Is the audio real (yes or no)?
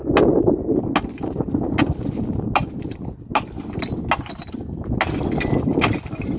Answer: yes